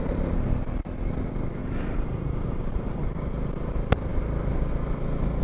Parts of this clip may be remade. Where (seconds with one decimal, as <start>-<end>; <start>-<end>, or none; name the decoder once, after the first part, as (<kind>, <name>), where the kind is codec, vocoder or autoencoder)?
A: 1.6-3.0 (vocoder, BigVGAN v2)